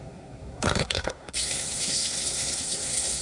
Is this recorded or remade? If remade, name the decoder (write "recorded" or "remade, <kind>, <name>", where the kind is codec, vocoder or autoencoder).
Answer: remade, codec, SNAC